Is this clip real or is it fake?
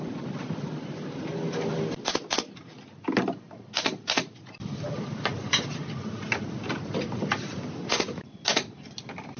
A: real